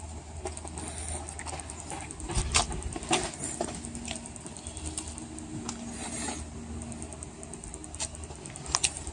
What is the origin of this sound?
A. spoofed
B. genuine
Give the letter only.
A